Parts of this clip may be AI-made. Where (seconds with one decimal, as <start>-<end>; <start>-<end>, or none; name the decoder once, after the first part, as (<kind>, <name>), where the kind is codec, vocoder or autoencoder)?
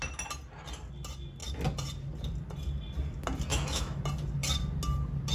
3.5-4.0 (autoencoder, DAC-VAE)